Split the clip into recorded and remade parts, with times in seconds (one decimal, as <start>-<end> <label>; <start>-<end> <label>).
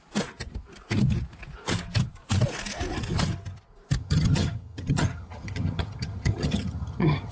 0.0-4.0 recorded; 4.0-7.3 remade